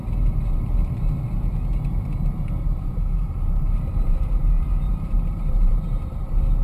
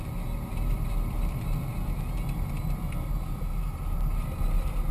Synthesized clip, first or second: first